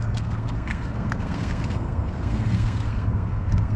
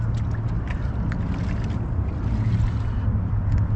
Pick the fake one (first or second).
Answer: first